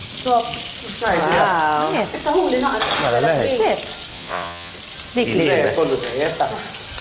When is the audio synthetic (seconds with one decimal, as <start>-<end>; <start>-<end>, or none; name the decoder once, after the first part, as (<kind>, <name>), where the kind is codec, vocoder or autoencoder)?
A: 4.1-4.7 (vocoder, Vocos)

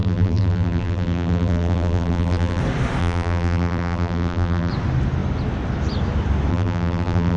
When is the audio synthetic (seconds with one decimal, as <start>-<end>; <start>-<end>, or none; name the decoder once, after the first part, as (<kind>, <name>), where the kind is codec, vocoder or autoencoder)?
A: 0.0-2.6 (vocoder, BigVGAN v2); 3.0-4.7; 6.5-7.4

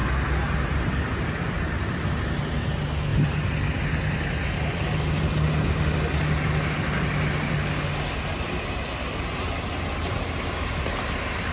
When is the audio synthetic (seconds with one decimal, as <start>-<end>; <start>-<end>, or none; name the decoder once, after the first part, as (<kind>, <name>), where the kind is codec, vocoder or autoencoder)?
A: none

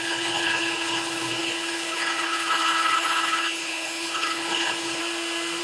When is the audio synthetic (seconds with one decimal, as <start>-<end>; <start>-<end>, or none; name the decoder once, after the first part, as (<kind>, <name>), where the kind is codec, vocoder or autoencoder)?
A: 0.0-5.0 (codec, HILCodec)